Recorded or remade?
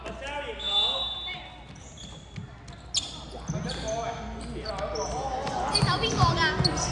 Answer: recorded